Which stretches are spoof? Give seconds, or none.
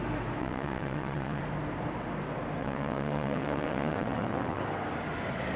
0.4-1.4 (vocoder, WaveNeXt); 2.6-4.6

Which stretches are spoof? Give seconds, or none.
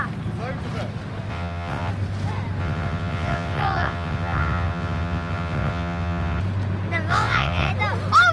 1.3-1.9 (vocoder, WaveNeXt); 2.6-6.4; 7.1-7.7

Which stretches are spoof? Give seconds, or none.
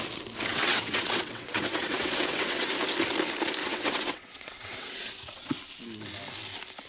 0.5-2.7 (vocoder, WaveNeXt); 3.6-5.6